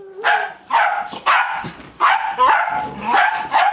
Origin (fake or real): real